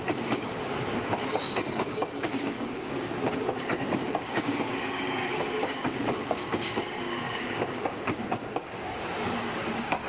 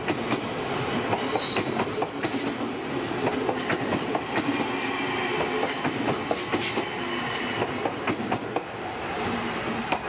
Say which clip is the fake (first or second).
first